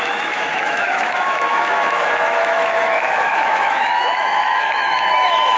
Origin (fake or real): fake